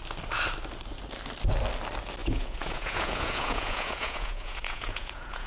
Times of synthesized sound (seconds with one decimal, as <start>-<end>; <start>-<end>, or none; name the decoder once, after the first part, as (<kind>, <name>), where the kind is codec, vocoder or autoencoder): 2.2-5.5 (vocoder, Vocos)